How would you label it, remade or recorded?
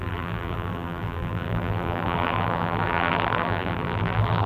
remade